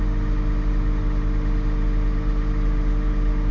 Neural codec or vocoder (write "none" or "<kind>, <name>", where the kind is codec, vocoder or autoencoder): none